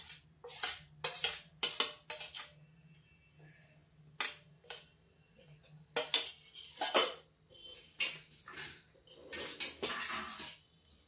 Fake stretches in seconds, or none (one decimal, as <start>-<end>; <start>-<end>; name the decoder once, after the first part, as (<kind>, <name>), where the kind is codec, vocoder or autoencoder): none